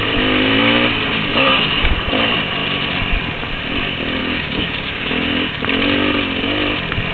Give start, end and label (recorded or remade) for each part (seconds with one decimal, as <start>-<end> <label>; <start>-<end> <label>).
0.0-1.3 recorded; 1.3-1.9 remade; 1.9-4.2 recorded; 4.2-5.6 remade; 5.6-7.1 recorded